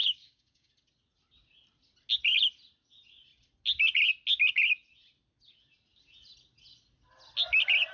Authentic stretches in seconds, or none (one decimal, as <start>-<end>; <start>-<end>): 0.7-7.9